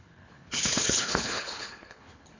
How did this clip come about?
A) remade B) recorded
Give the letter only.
A